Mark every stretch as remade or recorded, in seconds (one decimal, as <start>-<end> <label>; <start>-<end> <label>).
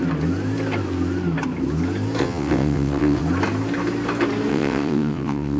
0.0-2.2 recorded; 2.2-3.2 remade; 3.2-4.5 recorded; 4.5-5.6 remade